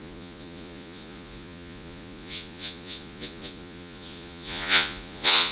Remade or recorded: remade